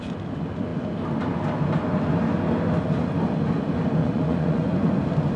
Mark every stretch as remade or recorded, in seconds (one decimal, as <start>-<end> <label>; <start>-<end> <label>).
0.0-4.0 recorded; 4.0-5.0 remade; 5.0-5.4 recorded